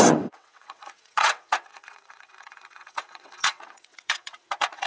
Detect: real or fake fake